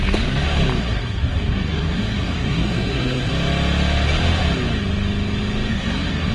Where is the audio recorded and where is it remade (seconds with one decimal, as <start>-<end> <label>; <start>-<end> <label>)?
0.0-0.8 recorded; 0.8-3.3 remade; 3.3-5.7 recorded; 5.7-6.3 remade